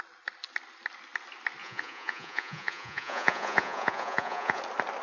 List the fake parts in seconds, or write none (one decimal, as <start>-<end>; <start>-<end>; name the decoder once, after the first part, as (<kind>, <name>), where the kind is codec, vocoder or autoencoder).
1.6-4.6 (vocoder, Vocos)